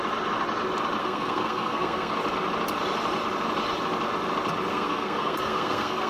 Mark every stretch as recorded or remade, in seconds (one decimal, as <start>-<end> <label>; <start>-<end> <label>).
0.0-1.0 recorded; 1.0-2.1 remade; 2.1-4.7 recorded; 4.7-6.1 remade